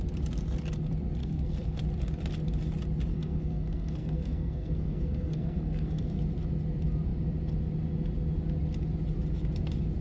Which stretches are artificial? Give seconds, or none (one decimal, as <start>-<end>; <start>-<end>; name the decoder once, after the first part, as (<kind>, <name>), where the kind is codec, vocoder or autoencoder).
1.2-1.8 (codec, SNAC); 3.1-6.2